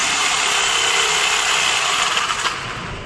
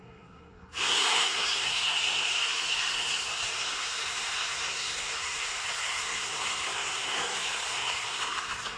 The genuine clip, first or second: first